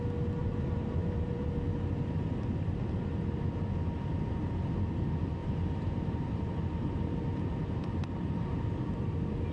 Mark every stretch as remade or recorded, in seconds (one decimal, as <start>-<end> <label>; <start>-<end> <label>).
0.0-0.4 recorded; 0.4-1.5 remade; 1.5-5.4 recorded; 5.4-8.8 remade; 8.8-9.5 recorded